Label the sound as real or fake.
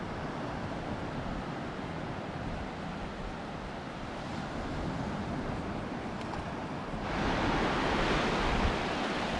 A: real